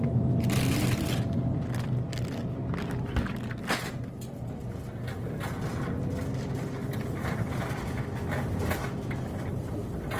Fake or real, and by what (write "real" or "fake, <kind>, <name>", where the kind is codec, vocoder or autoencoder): real